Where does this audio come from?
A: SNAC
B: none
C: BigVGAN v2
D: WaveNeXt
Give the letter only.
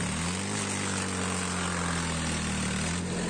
B